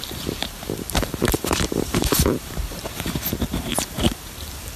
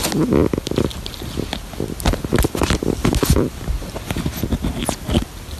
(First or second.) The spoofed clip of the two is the first